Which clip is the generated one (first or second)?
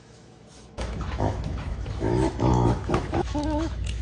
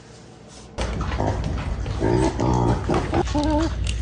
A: first